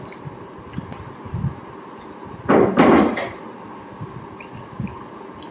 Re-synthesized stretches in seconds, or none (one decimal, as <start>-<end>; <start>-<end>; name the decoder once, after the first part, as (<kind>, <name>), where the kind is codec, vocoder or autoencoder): none